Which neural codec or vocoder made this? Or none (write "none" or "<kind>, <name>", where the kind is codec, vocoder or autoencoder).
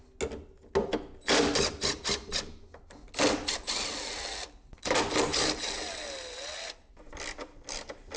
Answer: none